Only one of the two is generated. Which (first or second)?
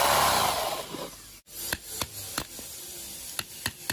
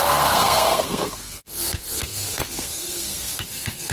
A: second